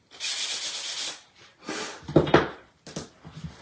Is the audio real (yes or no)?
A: yes